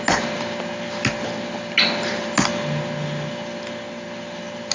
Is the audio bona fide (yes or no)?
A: yes